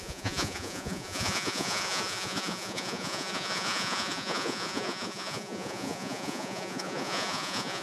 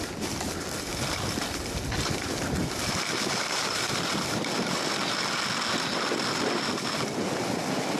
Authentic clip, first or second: second